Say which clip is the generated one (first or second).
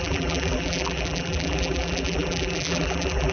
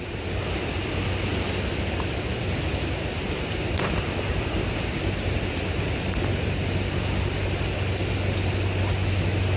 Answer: first